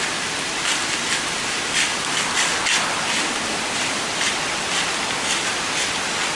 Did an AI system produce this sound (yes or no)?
yes